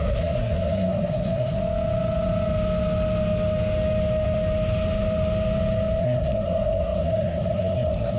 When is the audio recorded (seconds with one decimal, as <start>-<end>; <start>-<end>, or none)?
1.6-6.0